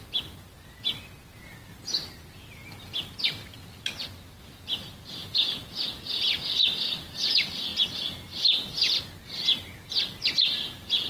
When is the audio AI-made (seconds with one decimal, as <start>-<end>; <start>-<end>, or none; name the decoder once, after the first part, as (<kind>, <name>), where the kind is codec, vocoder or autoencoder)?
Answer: none